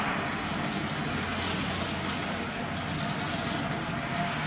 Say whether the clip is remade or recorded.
recorded